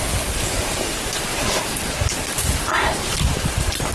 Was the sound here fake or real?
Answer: real